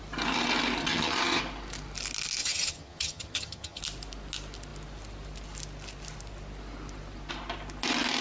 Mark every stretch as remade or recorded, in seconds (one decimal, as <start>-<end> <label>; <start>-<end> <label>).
0.0-0.8 recorded; 0.8-1.4 remade; 1.4-2.4 recorded; 2.4-3.8 remade; 3.8-8.2 recorded